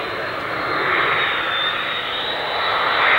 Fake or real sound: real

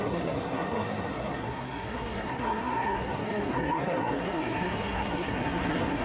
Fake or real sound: fake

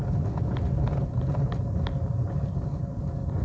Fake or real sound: real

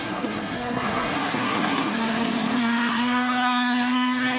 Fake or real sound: fake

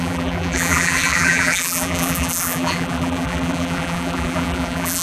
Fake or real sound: fake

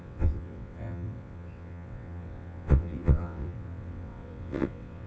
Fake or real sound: fake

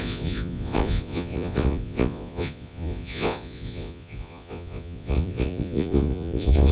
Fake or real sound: fake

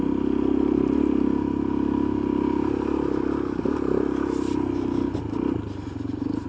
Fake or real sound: real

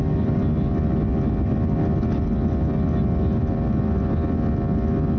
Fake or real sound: real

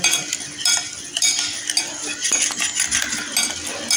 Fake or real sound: real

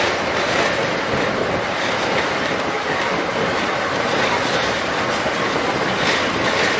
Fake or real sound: real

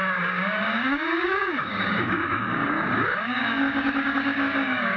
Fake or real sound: fake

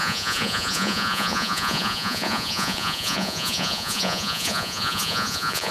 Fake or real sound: fake